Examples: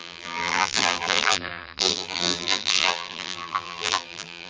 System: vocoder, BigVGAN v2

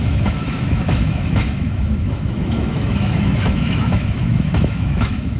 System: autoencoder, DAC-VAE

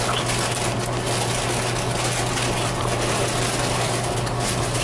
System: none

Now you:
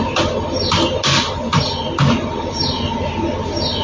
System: none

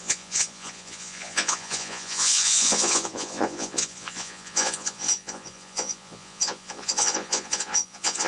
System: vocoder, Vocos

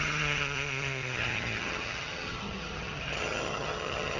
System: vocoder, HiFi-GAN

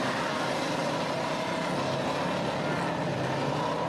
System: none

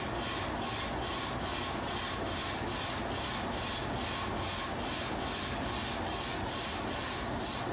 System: none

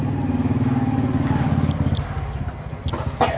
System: none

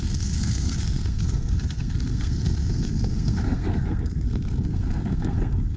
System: codec, SNAC